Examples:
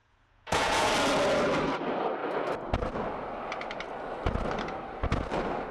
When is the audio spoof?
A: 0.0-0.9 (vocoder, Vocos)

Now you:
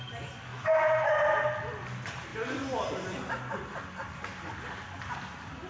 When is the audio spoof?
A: 0.5-1.1 (autoencoder, DAC-VAE)

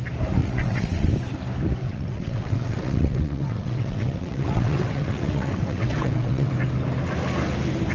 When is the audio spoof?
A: 0.4-1.1 (vocoder, WaveNeXt); 1.8-6.5

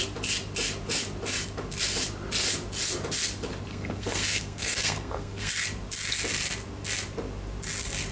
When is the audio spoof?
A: 3.7-5.5 (codec, SNAC)

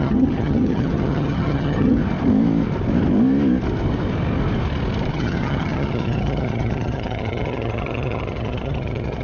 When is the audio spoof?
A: 0.0-2.0 (vocoder, HiFi-GAN); 5.1-9.2

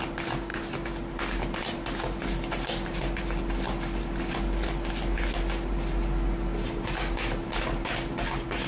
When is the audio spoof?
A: none